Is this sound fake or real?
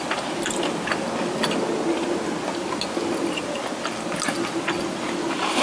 real